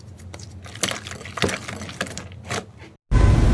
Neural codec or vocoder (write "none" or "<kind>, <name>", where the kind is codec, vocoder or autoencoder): none